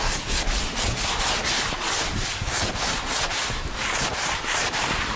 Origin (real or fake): real